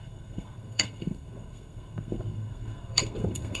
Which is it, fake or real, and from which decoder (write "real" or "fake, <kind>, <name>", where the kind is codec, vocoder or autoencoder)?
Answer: fake, codec, SNAC